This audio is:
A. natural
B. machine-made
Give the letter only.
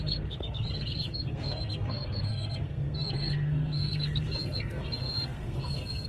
B